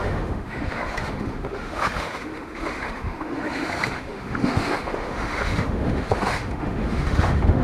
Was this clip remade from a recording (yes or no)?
yes